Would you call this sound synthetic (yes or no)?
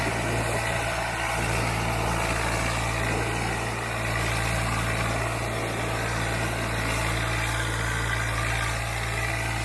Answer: no